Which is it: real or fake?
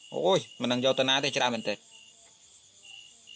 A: real